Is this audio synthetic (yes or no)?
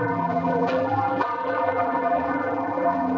yes